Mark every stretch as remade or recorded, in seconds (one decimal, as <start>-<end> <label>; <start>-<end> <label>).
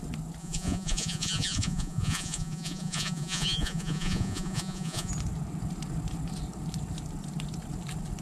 0.0-0.4 recorded; 0.4-5.1 remade; 5.1-8.2 recorded